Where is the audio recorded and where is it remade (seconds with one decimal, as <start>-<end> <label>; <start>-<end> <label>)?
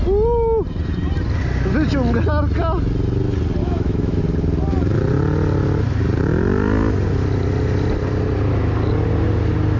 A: 0.0-3.6 recorded; 3.6-4.2 remade; 4.2-9.8 recorded